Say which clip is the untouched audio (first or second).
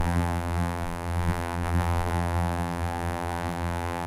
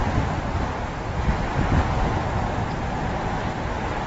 second